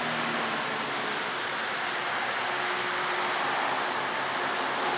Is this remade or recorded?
recorded